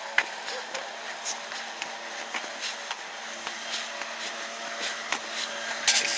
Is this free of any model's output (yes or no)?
yes